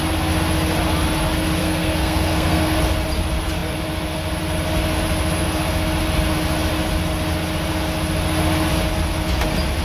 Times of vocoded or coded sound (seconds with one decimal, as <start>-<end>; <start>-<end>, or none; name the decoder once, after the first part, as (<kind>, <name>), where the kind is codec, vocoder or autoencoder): 1.6-2.8 (codec, SNAC)